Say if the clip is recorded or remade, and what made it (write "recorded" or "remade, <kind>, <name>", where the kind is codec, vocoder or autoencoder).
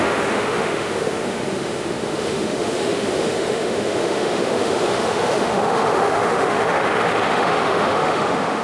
remade, autoencoder, DAC-VAE